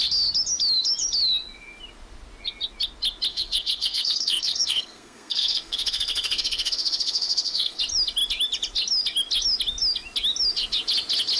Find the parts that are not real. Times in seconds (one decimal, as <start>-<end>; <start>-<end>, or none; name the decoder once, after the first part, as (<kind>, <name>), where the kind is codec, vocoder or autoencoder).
3.3-7.8 (codec, SNAC)